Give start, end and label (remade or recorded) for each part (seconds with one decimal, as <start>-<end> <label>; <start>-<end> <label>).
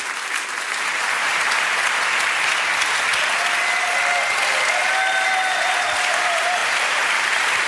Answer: 0.0-6.6 recorded; 6.6-7.1 remade; 7.1-7.7 recorded